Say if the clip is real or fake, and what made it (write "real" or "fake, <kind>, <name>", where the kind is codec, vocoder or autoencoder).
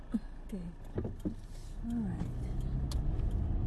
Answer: real